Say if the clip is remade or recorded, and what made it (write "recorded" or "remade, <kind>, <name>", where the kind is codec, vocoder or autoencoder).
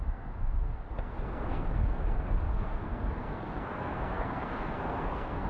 remade, codec, SNAC